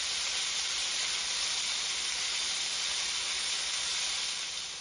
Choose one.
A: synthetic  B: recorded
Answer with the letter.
B